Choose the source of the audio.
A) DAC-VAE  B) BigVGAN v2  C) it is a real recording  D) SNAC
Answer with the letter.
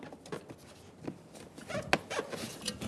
C